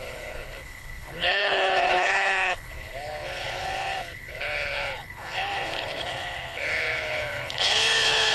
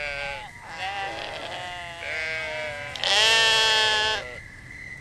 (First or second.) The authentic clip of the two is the second